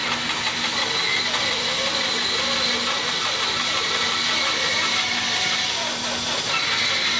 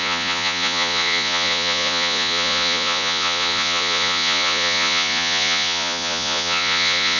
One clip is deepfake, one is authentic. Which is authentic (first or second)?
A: first